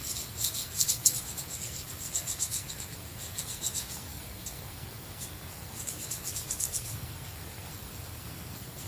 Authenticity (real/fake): fake